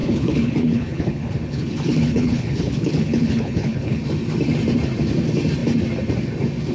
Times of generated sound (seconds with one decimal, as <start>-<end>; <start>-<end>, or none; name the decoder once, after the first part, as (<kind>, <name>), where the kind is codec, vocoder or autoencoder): 0.0-4.0 (codec, HILCodec)

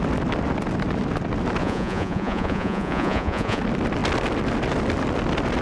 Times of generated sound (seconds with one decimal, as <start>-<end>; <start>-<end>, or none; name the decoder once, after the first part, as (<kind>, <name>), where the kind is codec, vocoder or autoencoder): 1.6-3.6 (vocoder, Vocos)

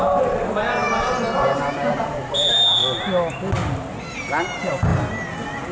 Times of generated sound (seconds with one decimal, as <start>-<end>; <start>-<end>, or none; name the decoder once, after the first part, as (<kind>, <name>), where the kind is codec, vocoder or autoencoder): none

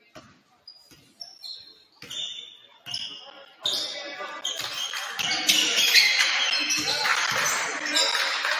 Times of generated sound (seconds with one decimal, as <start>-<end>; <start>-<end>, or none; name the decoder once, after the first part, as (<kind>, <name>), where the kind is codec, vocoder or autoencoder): none

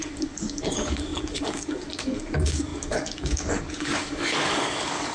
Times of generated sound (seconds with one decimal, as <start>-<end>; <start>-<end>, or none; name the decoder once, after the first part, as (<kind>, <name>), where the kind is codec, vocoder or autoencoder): 0.0-5.1 (codec, DAC)